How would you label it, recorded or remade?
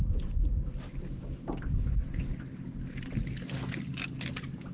recorded